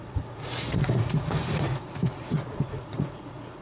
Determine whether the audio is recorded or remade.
remade